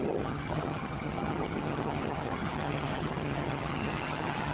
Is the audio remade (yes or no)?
yes